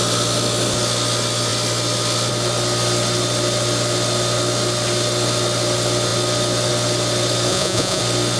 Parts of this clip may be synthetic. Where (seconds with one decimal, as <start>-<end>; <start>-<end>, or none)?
7.5-8.0